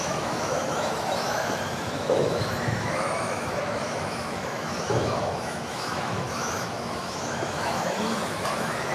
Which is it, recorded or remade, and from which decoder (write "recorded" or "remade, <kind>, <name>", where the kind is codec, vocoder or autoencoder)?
remade, autoencoder, DAC-VAE